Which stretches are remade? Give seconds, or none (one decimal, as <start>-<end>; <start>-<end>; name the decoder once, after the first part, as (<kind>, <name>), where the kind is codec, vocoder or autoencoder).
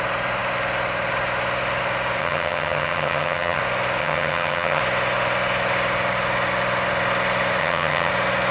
2.2-3.6 (vocoder, HiFi-GAN); 4.0-4.8; 7.6-8.1